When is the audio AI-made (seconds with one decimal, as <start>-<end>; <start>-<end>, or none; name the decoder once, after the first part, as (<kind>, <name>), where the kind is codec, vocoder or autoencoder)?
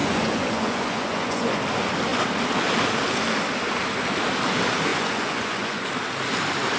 0.0-1.6 (vocoder, Vocos); 4.9-5.9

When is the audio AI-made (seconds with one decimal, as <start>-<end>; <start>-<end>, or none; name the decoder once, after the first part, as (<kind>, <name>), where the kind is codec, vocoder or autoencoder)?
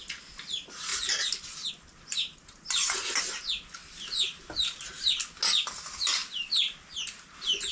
none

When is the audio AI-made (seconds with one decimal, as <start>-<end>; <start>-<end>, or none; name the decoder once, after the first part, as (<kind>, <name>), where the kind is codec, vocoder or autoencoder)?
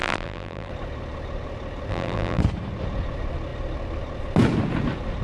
0.0-0.7 (vocoder, BigVGAN v2); 1.9-2.4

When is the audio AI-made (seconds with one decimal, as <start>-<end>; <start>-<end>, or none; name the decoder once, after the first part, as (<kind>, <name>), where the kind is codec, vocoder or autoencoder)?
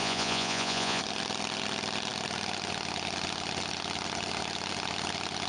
0.0-1.0 (vocoder, Vocos)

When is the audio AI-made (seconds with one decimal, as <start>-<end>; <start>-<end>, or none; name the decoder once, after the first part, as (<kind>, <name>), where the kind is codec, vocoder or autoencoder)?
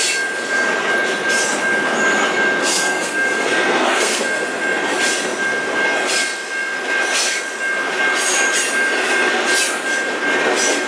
2.6-4.2 (codec, SNAC)